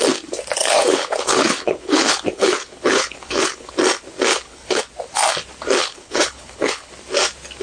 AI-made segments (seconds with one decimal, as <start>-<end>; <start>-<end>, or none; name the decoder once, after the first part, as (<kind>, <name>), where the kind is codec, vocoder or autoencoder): 0.6-3.7 (codec, HILCodec); 4.3-4.8; 5.8-6.9